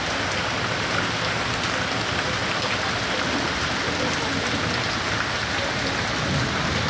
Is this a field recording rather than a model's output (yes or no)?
yes